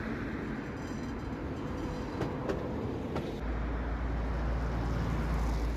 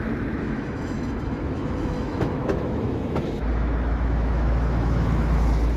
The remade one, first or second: second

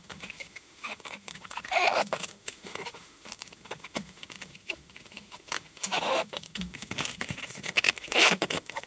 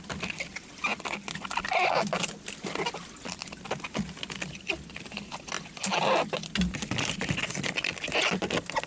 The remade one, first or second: first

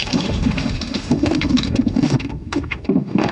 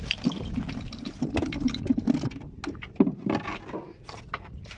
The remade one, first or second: first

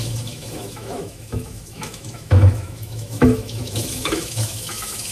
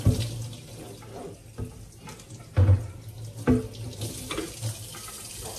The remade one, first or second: first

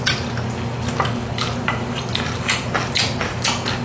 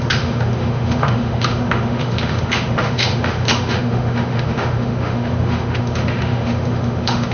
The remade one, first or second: second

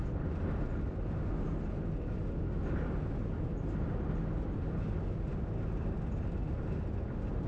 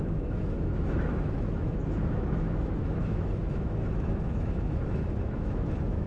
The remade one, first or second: second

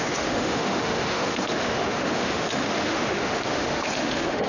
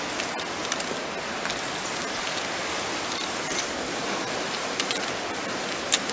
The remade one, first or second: first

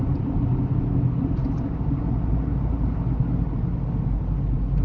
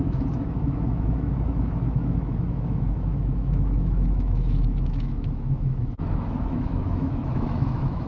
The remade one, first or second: second